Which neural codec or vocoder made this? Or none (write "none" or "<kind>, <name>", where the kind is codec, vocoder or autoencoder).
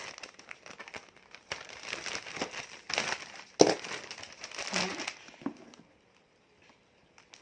none